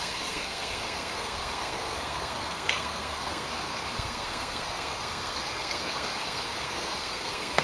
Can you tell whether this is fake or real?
fake